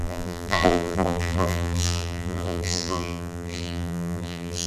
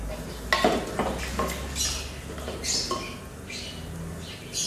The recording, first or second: second